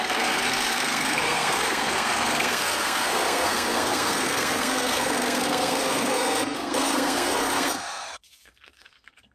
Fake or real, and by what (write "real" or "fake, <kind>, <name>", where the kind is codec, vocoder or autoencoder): fake, codec, SNAC